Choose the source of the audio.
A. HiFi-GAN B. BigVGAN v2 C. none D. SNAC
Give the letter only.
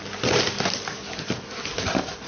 C